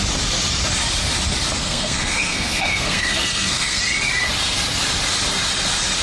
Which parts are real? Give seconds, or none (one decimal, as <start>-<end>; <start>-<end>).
0.0-1.6; 3.8-6.0